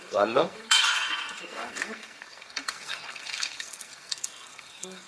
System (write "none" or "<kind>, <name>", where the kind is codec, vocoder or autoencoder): codec, SNAC